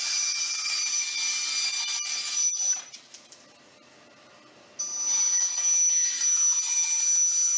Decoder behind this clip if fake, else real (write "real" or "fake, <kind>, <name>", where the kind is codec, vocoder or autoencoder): real